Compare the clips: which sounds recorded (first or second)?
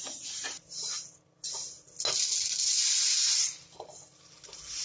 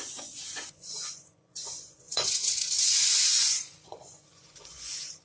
first